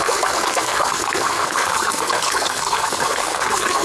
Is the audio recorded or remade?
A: remade